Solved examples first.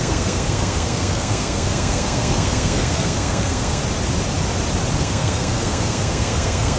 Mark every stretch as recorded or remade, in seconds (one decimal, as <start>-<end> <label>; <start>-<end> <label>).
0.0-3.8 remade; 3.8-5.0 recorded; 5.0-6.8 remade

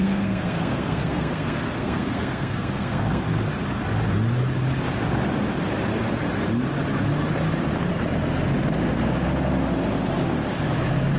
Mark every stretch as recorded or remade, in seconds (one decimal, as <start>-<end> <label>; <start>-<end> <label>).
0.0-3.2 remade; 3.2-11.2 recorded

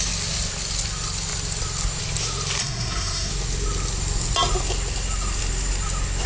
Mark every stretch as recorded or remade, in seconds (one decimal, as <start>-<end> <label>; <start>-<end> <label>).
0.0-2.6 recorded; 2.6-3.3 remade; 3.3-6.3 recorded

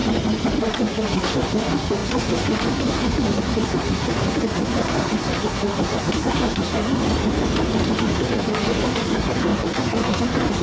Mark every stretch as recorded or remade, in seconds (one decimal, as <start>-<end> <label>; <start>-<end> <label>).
0.0-0.6 recorded; 0.6-7.0 remade; 7.0-8.0 recorded; 8.0-10.6 remade

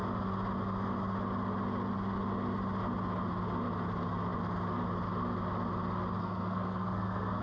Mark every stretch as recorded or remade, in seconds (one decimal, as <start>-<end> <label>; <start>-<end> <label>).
0.0-6.2 recorded; 6.2-7.4 remade

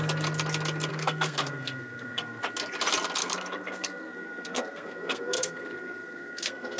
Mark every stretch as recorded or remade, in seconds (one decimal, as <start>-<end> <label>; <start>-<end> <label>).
0.0-0.9 recorded; 0.9-2.4 remade; 2.4-3.2 recorded; 3.2-6.8 remade